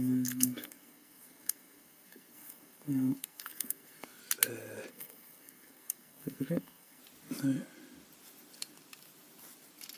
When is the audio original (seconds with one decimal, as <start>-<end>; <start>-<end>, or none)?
4.2-4.9; 7.0-10.0